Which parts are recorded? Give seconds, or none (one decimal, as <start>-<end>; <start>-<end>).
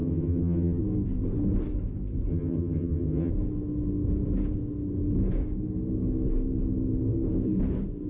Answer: 0.8-2.3; 3.3-8.1